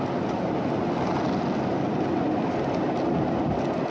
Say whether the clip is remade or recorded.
recorded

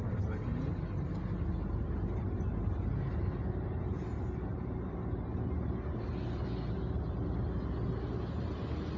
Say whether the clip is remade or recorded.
recorded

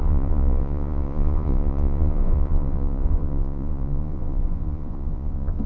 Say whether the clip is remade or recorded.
remade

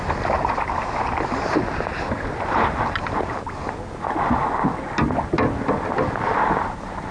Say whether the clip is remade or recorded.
recorded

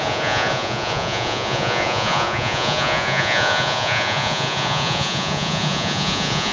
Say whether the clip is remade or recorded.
remade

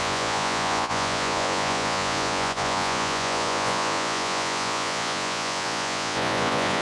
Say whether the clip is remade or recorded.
remade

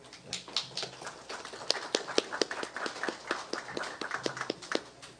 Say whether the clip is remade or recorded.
recorded